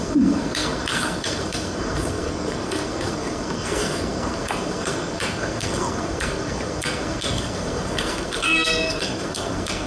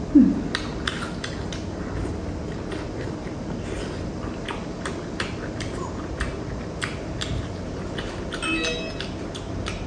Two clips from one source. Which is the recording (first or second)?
second